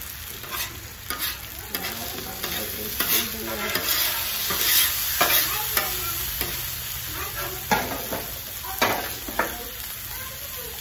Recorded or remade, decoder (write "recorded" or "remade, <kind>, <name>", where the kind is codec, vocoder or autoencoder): recorded